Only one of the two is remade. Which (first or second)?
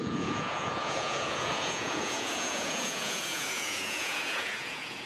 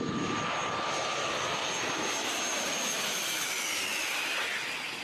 first